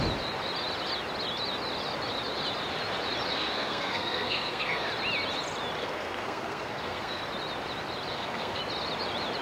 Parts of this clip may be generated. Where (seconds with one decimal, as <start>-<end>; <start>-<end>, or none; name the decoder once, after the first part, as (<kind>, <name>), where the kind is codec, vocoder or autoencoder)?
3.3-4.9 (codec, SNAC); 5.8-7.2; 8.1-8.6